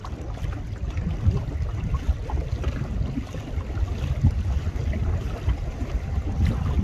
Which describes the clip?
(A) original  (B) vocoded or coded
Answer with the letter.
A